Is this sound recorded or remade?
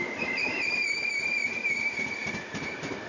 remade